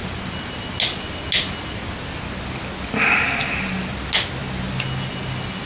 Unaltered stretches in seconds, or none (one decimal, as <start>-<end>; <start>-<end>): 0.6-5.7